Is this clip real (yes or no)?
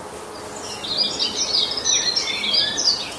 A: yes